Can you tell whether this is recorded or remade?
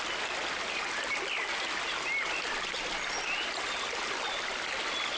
recorded